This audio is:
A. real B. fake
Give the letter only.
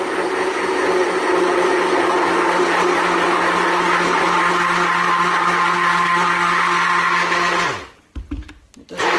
A